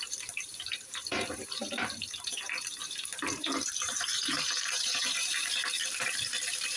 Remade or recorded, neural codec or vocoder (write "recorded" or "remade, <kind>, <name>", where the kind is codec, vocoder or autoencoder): remade, vocoder, BigVGAN v2